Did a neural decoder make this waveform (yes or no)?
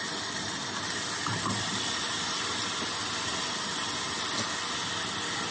no